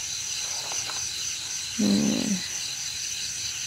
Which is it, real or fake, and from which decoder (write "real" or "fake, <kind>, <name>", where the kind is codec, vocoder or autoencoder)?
real